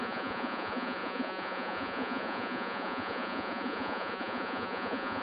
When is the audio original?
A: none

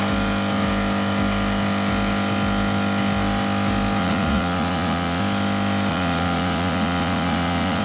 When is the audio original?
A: 0.0-4.0; 5.2-5.9